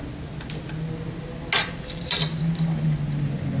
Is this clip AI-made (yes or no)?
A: no